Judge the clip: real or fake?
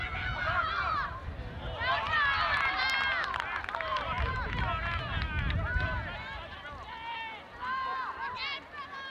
real